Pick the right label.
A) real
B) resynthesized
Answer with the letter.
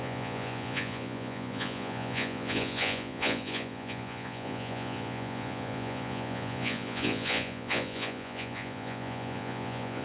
B